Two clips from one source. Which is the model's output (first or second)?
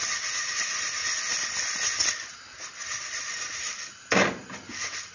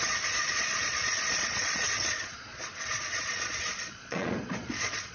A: second